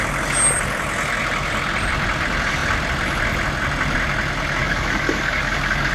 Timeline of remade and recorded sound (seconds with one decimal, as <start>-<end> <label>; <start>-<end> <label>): 0.0-4.6 recorded; 4.6-5.9 remade